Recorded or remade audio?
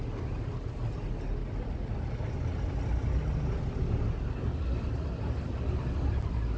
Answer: recorded